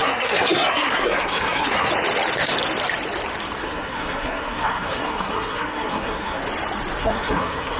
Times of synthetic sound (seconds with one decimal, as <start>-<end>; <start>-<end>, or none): 0.0-1.9; 3.6-6.4; 7.0-7.8